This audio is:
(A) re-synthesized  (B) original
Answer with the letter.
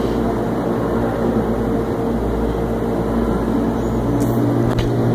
B